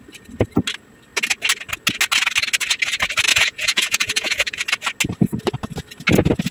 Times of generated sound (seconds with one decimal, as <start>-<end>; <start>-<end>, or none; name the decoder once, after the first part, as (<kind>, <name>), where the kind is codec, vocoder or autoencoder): 3.3-4.6 (vocoder, Vocos)

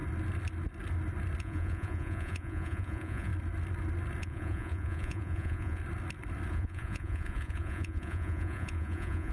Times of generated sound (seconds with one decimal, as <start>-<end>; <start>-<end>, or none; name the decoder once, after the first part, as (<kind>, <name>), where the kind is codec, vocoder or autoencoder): 1.4-3.3 (vocoder, Vocos); 4.2-5.8; 6.5-9.3

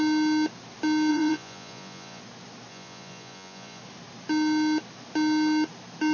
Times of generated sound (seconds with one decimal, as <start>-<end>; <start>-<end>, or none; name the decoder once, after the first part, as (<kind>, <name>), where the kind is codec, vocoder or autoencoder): 1.1-2.2 (vocoder, Vocos); 2.7-3.8

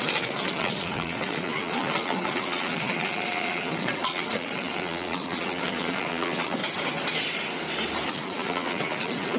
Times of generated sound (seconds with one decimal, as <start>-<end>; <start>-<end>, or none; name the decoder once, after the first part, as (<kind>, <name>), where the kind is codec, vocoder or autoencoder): 0.0-6.6 (vocoder, Vocos); 8.1-9.4

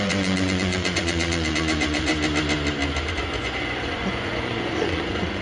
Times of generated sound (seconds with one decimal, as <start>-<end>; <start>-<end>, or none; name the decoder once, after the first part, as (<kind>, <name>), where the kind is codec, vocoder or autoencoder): 0.0-2.1 (vocoder, Vocos); 3.1-5.4

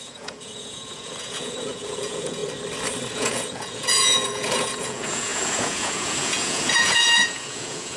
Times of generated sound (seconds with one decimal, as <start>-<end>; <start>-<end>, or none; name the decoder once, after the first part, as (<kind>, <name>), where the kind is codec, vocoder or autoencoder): 0.0-2.4 (vocoder, Vocos); 3.1-8.0

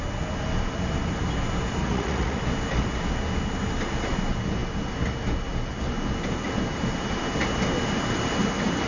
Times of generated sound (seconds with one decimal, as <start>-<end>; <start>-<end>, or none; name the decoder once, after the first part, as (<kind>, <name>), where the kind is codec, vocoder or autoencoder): 1.8-2.4 (vocoder, Vocos)

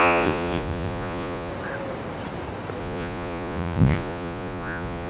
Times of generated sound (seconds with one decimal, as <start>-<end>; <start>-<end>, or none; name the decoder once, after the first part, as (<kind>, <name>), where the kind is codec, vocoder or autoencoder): 0.0-1.5 (vocoder, Vocos); 2.8-5.1